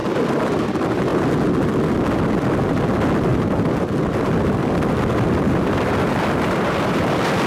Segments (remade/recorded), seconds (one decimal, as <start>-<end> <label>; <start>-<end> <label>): 0.0-0.7 remade; 0.7-3.3 recorded; 3.3-7.0 remade; 7.0-7.5 recorded